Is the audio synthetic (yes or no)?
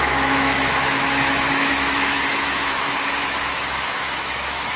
yes